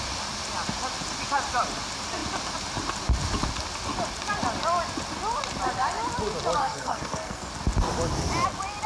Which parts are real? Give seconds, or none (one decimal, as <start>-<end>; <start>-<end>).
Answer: 0.0-6.6; 7.5-8.9